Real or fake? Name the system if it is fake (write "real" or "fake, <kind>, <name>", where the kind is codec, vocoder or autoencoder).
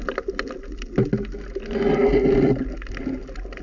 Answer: real